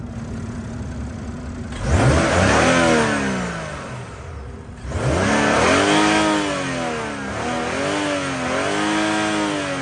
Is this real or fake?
real